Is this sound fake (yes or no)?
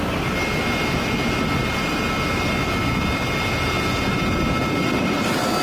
no